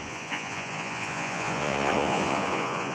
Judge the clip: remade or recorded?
remade